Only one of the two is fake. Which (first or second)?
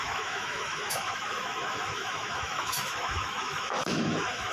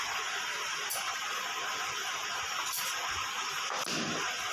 first